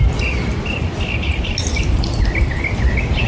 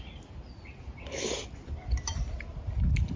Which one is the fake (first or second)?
first